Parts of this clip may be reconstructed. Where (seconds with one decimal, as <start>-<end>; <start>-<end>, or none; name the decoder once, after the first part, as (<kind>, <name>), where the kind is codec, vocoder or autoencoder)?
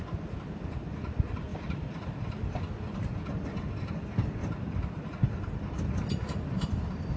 1.5-2.2 (vocoder, BigVGAN v2); 4.4-5.8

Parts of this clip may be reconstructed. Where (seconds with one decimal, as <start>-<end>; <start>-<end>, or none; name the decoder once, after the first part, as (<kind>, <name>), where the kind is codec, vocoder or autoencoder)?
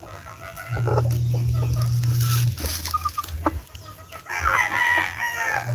0.0-0.9 (vocoder, BigVGAN v2); 4.3-5.7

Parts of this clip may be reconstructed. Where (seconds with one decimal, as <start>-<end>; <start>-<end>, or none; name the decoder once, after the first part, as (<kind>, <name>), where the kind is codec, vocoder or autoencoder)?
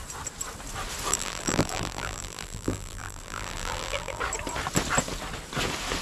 1.1-4.2 (vocoder, BigVGAN v2)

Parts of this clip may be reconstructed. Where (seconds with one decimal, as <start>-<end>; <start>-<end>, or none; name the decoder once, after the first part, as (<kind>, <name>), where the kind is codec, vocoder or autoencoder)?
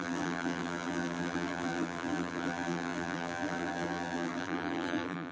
0.0-5.3 (vocoder, BigVGAN v2)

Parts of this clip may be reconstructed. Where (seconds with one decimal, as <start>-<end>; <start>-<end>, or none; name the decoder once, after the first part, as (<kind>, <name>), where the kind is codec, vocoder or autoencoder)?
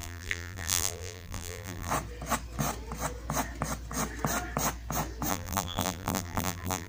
0.0-1.9 (vocoder, BigVGAN v2); 5.3-6.9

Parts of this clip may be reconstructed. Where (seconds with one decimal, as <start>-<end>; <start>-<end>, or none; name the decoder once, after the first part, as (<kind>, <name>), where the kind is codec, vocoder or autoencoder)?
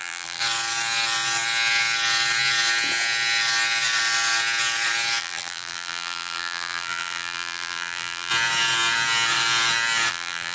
0.0-0.4 (vocoder, BigVGAN v2); 5.2-8.3; 10.1-10.5